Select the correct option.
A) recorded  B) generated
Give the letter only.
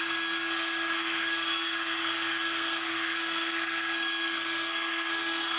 B